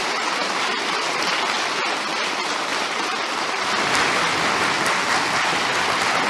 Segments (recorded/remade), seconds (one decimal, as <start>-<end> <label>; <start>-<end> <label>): 0.0-1.3 remade; 1.3-2.7 recorded; 2.7-3.6 remade; 3.6-6.3 recorded